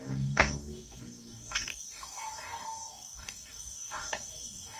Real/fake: fake